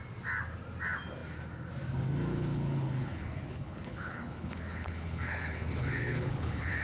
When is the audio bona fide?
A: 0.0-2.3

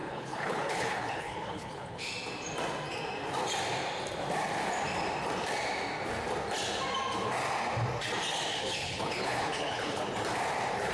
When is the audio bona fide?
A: 2.1-8.5; 10.0-10.9

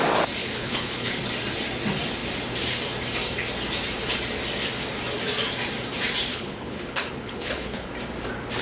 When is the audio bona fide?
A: 0.0-0.4; 1.1-6.3; 7.9-8.6

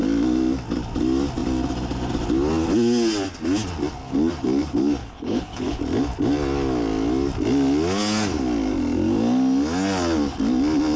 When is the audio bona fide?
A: 0.0-5.0; 5.8-11.0

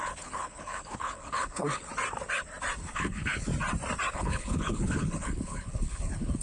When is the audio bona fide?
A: 1.9-2.8; 3.5-4.1